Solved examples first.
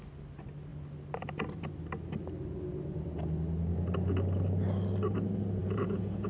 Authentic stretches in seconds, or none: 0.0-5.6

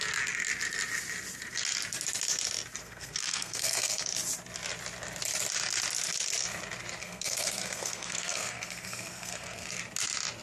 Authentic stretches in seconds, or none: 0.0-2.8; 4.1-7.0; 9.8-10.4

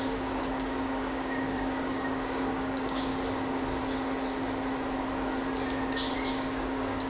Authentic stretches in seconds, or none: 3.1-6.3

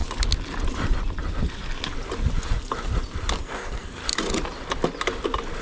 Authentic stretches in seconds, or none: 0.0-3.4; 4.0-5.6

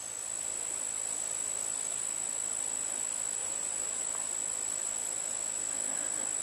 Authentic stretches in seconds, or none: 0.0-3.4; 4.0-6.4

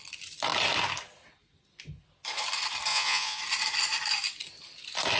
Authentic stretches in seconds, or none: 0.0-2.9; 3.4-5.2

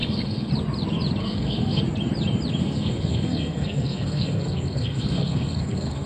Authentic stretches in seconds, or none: 0.5-1.2; 1.8-2.6

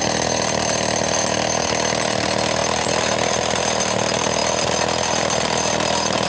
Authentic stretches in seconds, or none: 0.0-6.3